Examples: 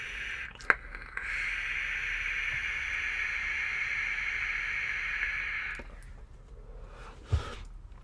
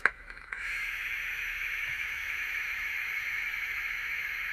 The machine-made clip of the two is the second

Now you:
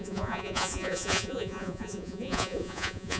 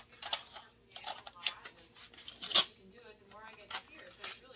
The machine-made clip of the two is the first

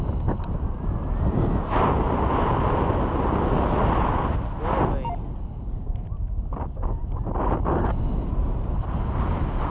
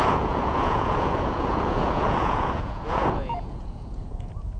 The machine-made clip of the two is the second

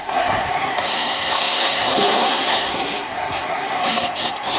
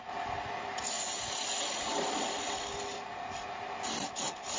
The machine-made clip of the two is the first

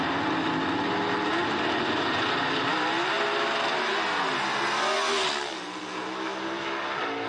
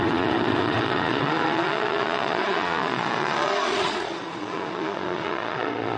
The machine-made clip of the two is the second